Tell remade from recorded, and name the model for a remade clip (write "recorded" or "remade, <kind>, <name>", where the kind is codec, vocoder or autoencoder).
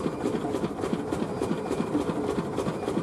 recorded